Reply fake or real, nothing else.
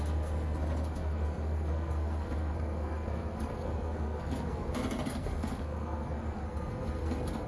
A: fake